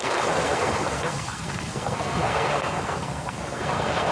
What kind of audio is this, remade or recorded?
remade